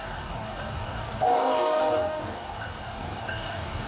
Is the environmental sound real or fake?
fake